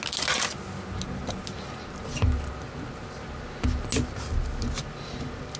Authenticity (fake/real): real